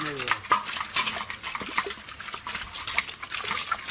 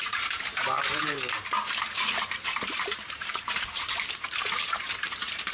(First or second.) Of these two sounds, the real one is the first